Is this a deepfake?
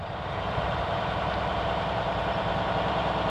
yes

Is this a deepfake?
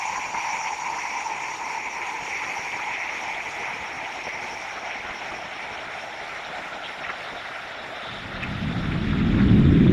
no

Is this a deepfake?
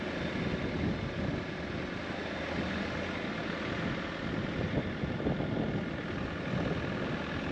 no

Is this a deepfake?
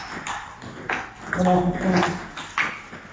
no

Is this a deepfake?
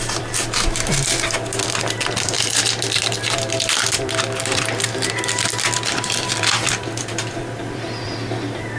yes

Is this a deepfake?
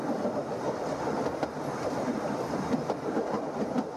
no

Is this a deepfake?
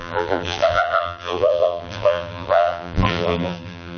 yes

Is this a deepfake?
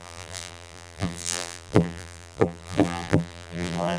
yes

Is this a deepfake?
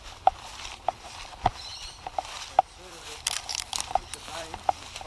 yes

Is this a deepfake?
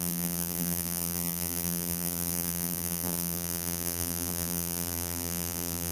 yes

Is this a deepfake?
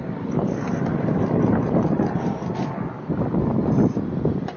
no